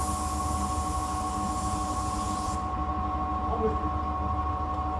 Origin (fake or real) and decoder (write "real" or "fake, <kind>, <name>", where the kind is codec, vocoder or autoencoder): real